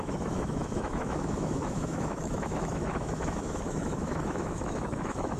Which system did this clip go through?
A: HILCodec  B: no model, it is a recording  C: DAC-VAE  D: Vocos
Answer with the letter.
C